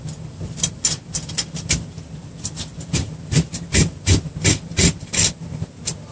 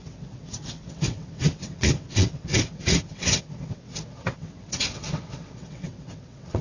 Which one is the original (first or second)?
first